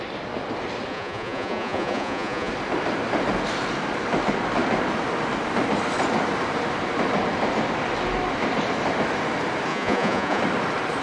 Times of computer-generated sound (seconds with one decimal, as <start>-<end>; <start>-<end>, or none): 0.9-2.5; 9.7-10.4